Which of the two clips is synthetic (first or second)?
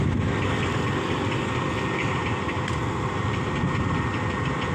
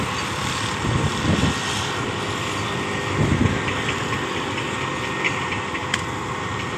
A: first